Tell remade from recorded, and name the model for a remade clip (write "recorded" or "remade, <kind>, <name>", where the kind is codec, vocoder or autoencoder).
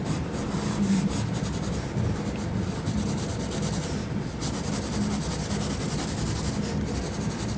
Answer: recorded